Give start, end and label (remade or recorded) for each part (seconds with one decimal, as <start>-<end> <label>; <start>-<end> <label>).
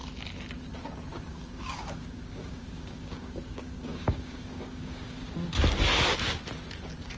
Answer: 0.0-1.1 recorded; 1.1-5.3 remade; 5.3-7.2 recorded